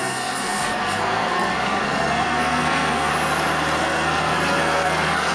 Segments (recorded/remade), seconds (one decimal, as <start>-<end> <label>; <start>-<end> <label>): 0.0-3.1 remade; 3.1-3.8 recorded; 3.8-5.3 remade